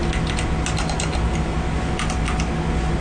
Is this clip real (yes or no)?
yes